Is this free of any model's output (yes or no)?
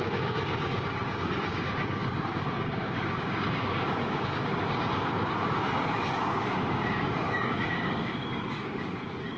no